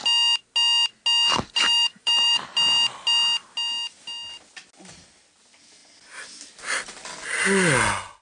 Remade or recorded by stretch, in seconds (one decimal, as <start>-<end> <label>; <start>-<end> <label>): 0.0-1.6 recorded; 1.6-2.4 remade; 2.4-8.2 recorded